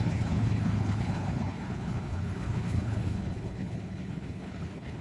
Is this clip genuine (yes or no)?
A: no